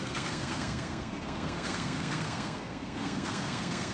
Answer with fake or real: fake